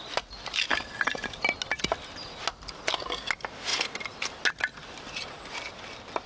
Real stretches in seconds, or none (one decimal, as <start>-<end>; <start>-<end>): 0.0-6.3